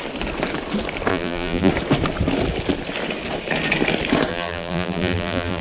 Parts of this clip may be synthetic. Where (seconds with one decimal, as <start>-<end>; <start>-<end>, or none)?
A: 1.1-1.7; 4.3-5.6